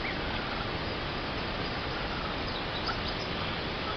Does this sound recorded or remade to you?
remade